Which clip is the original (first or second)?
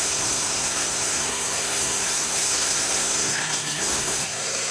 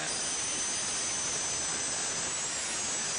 second